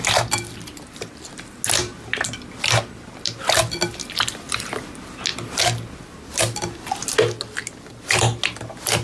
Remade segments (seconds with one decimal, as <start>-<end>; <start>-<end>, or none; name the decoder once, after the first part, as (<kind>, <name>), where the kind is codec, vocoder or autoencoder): none